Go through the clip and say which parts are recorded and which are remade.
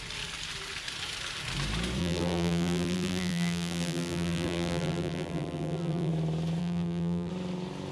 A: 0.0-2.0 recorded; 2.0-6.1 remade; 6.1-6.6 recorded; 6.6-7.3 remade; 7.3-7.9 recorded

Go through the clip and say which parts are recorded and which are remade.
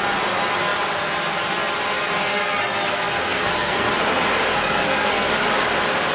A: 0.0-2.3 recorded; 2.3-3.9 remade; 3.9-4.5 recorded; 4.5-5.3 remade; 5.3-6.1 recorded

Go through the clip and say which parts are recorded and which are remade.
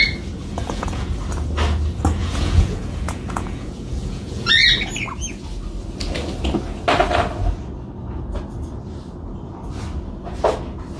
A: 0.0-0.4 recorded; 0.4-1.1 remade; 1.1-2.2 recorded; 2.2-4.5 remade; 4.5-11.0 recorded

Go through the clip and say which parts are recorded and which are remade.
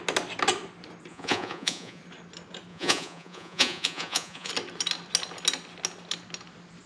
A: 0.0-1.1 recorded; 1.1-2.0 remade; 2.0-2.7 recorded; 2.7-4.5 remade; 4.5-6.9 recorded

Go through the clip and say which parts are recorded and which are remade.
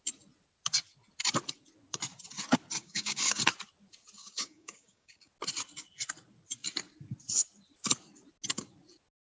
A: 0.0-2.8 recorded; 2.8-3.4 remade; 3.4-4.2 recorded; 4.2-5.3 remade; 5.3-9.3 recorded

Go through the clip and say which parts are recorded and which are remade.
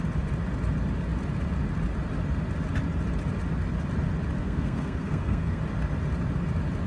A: 0.0-4.4 recorded; 4.4-5.6 remade; 5.6-6.9 recorded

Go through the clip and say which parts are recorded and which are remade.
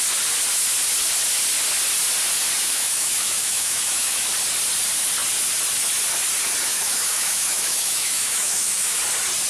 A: 0.0-2.6 recorded; 2.6-4.3 remade; 4.3-6.7 recorded; 6.7-9.0 remade; 9.0-9.5 recorded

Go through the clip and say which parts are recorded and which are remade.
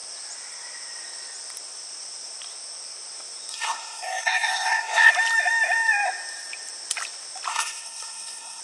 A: 0.0-3.5 recorded; 3.5-5.1 remade; 5.1-7.5 recorded; 7.5-8.6 remade